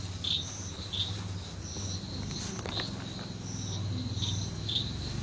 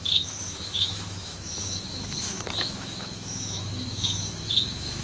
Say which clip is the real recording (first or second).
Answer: first